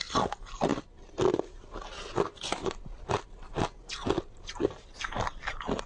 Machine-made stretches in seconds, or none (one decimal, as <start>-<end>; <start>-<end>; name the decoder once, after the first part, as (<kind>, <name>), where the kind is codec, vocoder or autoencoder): none